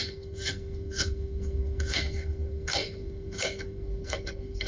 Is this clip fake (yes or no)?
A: yes